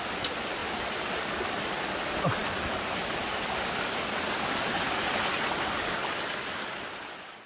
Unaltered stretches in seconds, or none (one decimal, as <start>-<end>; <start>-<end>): 0.0-7.5